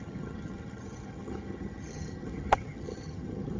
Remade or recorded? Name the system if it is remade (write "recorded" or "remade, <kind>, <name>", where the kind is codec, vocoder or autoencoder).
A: remade, vocoder, HiFi-GAN